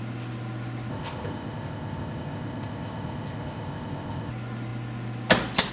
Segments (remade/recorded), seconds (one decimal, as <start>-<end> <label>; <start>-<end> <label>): 0.0-0.9 recorded; 0.9-4.3 remade; 4.3-5.7 recorded